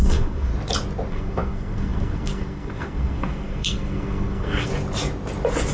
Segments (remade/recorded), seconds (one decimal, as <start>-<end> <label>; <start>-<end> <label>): 0.0-0.5 remade; 0.5-1.1 recorded; 1.1-4.7 remade; 4.7-5.7 recorded